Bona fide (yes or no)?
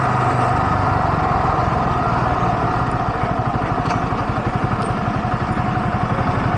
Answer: yes